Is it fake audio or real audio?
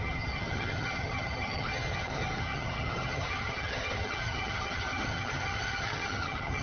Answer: fake